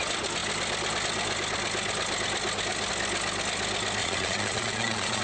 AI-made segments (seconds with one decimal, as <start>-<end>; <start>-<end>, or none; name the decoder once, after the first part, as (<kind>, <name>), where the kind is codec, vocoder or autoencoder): 4.0-5.2 (vocoder, Vocos)